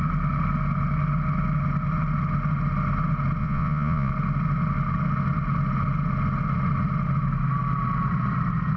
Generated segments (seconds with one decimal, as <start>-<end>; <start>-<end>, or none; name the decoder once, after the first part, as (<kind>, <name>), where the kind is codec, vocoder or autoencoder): 3.4-4.1 (vocoder, Vocos)